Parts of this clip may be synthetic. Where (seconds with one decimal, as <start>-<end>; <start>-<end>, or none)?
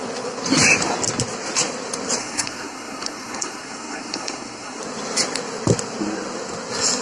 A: 2.2-4.8